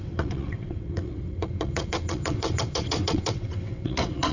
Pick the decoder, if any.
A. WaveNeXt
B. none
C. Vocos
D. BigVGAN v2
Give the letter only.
A